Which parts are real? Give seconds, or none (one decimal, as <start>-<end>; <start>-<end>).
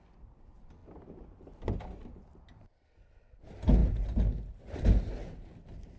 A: 0.0-0.8; 1.5-6.0